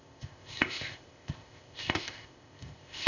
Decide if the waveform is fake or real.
fake